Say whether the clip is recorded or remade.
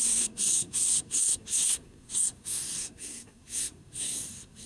remade